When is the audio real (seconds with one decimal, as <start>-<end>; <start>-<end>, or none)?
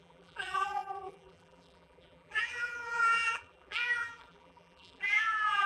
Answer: none